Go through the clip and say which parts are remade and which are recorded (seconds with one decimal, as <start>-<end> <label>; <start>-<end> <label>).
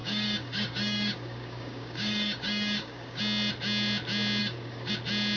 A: 0.0-3.2 remade; 3.2-4.4 recorded; 4.4-4.9 remade; 4.9-5.4 recorded